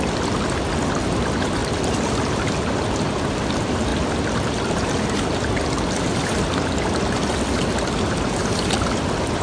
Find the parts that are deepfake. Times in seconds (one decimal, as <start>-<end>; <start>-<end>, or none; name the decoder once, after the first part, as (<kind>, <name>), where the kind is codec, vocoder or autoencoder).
none